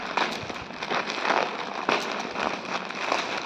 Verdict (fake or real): real